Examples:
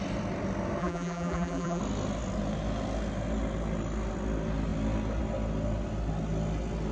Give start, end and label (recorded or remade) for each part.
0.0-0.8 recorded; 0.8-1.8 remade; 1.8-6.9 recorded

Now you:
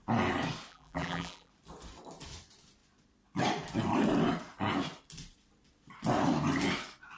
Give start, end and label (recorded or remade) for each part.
0.0-0.7 recorded; 0.7-1.5 remade; 1.5-7.2 recorded

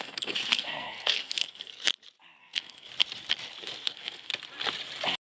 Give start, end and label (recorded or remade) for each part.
0.0-1.9 remade; 1.9-2.4 recorded; 2.4-2.9 remade; 2.9-3.6 recorded; 3.6-4.3 remade; 4.3-5.3 recorded